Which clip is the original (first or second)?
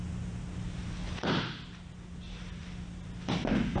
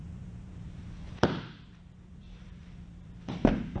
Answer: first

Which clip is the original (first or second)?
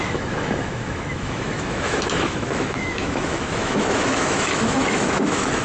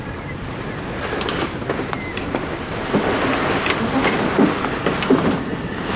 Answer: second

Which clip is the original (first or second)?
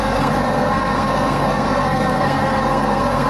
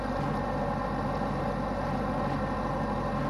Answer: second